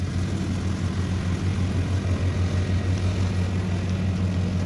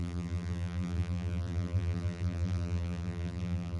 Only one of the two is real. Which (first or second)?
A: first